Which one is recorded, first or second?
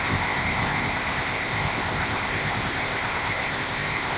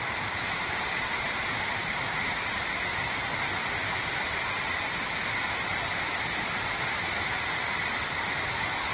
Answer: second